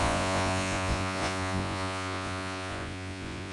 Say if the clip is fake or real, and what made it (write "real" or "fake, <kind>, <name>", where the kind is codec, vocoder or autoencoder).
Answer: fake, vocoder, Vocos